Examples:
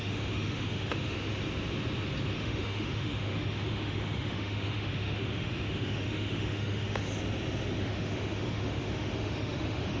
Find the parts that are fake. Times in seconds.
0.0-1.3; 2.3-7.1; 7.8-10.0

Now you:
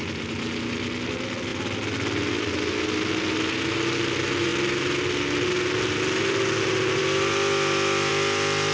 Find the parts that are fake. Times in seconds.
none